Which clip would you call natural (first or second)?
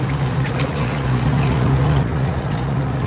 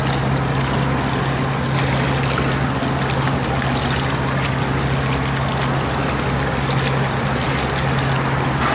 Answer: second